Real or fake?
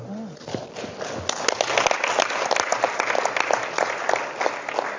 real